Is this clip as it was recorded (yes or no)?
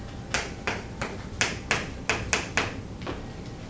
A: yes